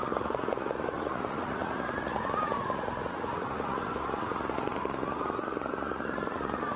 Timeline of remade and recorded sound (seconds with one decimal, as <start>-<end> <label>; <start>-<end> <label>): 0.0-6.8 remade